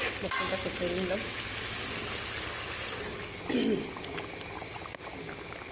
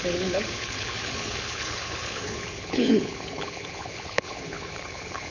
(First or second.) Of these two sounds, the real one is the first